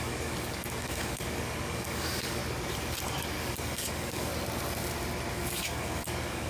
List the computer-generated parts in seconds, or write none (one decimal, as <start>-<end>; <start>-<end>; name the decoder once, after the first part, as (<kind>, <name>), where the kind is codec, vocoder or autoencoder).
0.0-2.4 (codec, DAC); 3.4-4.3; 5.3-6.5